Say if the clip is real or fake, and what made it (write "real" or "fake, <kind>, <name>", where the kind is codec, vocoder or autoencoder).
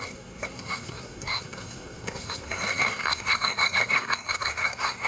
fake, codec, SNAC